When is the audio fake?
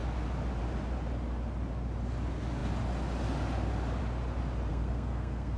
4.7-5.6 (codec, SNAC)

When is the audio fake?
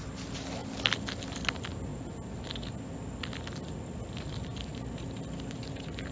none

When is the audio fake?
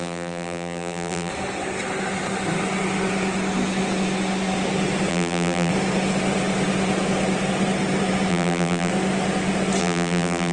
0.0-1.3 (vocoder, BigVGAN v2); 5.1-5.7; 8.3-8.9; 9.8-10.5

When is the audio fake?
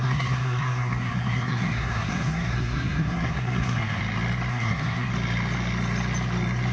0.0-4.0 (codec, SNAC); 4.5-5.1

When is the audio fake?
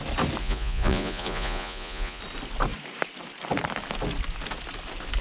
0.4-2.2 (vocoder, Vocos)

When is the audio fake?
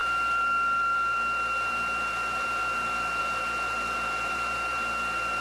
0.0-5.4 (vocoder, BigVGAN v2)